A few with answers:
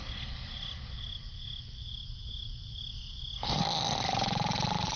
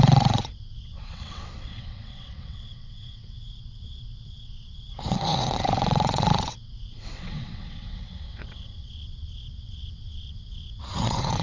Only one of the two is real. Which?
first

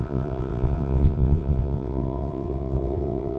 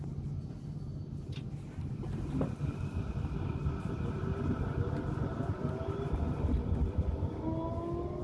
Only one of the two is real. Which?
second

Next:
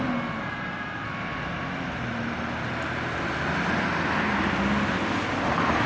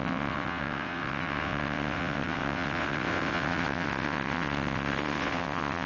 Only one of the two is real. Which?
first